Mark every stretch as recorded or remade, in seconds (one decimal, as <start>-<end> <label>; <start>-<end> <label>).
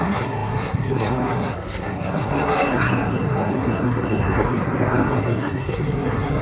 0.0-6.4 remade